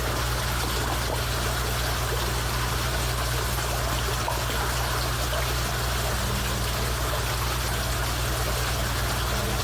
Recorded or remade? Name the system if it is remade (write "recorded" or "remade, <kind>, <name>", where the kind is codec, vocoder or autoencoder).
recorded